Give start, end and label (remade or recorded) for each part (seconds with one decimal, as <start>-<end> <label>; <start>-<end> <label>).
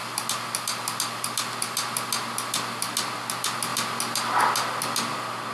0.0-5.5 recorded